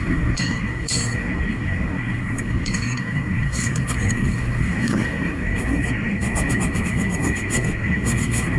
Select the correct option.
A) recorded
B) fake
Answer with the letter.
B